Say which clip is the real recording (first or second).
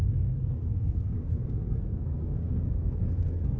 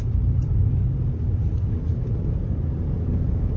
second